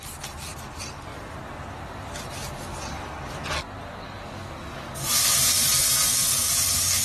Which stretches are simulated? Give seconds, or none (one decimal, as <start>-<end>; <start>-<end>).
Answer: 1.1-3.5